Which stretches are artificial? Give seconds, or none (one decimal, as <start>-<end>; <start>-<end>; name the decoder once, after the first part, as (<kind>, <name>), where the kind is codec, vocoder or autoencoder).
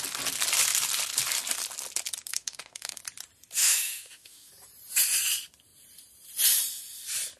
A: 2.3-3.0 (autoencoder, DAC-VAE); 3.6-4.5